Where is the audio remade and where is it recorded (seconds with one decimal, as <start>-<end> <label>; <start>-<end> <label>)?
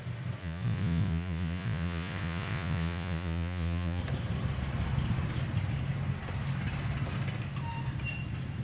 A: 0.0-0.4 recorded; 0.4-4.0 remade; 4.0-8.6 recorded